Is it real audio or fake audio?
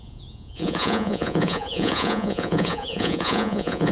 fake